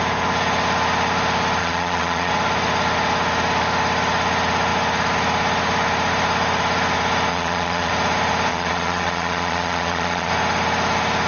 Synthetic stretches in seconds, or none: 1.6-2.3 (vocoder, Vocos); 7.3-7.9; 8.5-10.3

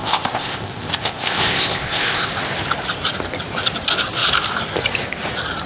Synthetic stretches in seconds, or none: 0.0-2.3 (codec, ZipCodec)

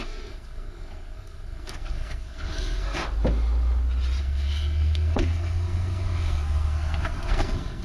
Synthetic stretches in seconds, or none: 0.0-3.0 (codec, SNAC); 4.2-7.8

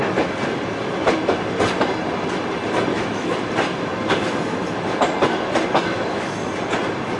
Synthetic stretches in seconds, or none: 2.9-3.5 (autoencoder, DAC-VAE); 5.9-6.5

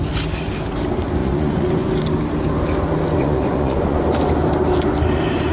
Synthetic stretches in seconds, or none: 1.2-1.9 (vocoder, Vocos); 3.2-4.0

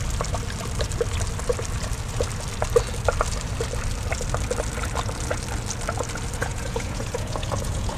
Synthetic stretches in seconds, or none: 6.4-8.0 (vocoder, Vocos)

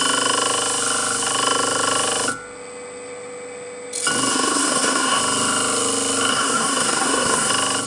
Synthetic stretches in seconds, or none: 4.3-5.2 (codec, SNAC); 6.3-7.5